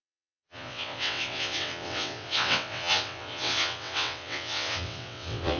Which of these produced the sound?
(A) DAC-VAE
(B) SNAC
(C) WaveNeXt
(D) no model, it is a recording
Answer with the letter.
C